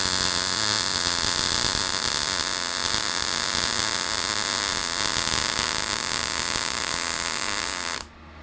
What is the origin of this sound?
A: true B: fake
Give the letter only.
A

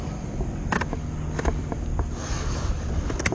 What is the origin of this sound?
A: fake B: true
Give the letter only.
B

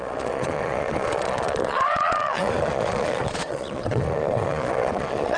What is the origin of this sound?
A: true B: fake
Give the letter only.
B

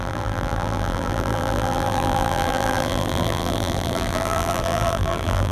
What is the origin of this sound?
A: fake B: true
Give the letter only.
A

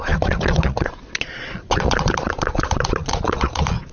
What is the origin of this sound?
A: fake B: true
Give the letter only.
A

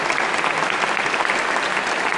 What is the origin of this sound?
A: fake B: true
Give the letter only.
B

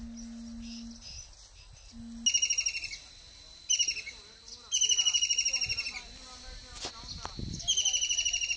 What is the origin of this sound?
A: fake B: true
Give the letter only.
B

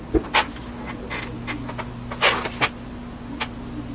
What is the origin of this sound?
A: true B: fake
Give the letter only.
A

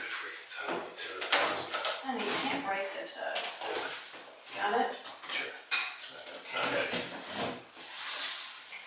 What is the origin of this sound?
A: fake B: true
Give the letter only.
B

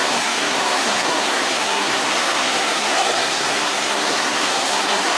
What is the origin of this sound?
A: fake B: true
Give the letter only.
A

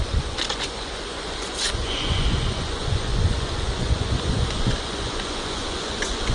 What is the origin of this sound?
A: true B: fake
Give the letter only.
B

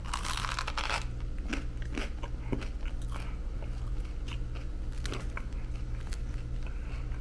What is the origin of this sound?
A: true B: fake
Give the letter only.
A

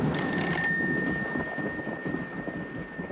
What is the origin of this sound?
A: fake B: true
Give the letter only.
B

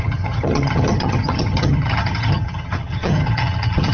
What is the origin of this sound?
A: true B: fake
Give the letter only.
B